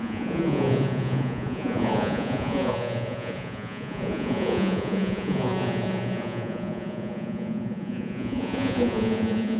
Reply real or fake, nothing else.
fake